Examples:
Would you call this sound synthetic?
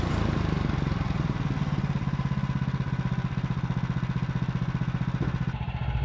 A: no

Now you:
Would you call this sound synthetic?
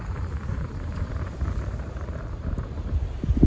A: yes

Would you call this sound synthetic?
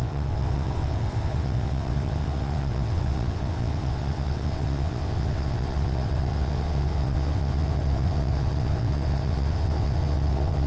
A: yes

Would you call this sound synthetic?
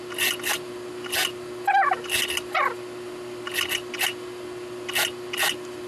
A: no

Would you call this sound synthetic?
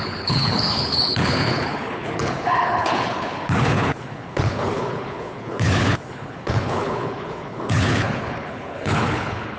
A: yes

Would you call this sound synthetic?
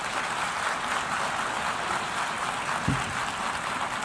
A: no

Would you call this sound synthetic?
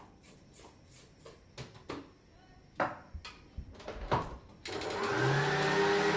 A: no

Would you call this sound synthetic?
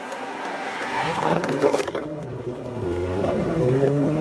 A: yes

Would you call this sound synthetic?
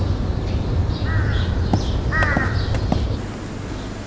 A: no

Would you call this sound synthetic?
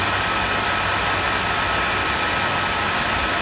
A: no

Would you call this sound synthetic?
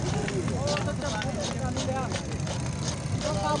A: no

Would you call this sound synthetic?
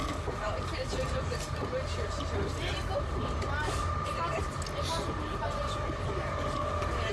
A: no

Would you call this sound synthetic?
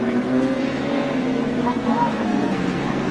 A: yes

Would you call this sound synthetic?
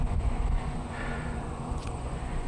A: yes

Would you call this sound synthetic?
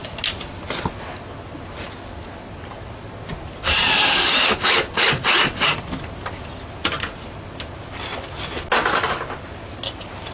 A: no